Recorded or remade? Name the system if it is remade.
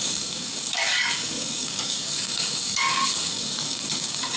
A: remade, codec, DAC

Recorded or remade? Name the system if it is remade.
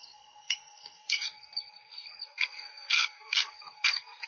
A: remade, codec, SNAC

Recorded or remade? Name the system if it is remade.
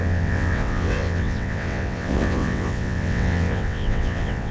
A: remade, vocoder, WaveNeXt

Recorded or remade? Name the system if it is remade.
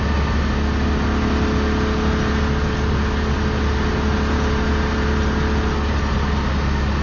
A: recorded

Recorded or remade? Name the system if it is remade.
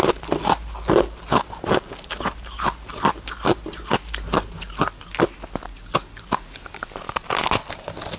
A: recorded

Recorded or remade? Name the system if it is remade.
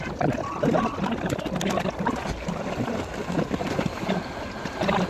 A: recorded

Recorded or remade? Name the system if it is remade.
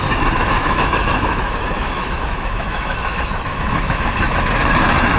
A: remade, autoencoder, DAC-VAE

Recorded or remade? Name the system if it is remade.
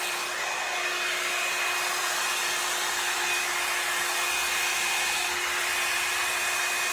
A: recorded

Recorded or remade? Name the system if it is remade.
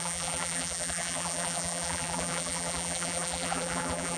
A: remade, vocoder, BigVGAN v2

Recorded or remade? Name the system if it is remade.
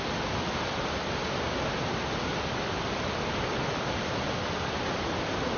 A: recorded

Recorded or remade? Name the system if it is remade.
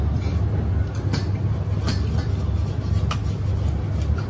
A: recorded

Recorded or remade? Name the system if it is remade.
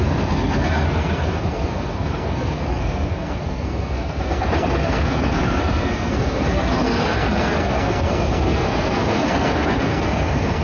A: remade, codec, SNAC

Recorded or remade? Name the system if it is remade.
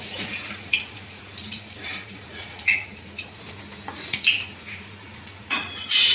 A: remade, vocoder, Vocos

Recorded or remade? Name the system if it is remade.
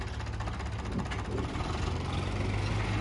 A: recorded